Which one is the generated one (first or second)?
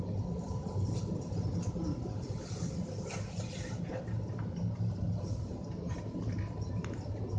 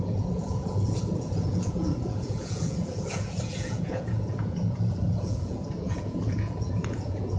second